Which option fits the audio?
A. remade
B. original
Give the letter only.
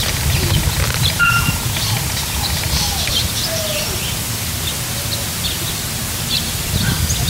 B